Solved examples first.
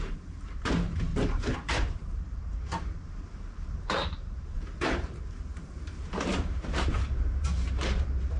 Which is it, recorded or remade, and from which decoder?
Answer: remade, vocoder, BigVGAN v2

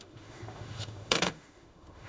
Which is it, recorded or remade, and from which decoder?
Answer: remade, autoencoder, DAC-VAE